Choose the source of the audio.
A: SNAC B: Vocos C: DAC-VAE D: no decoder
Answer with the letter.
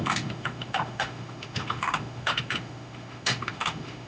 C